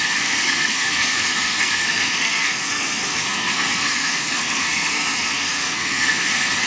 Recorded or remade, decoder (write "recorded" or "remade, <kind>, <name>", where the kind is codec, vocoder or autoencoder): remade, codec, SNAC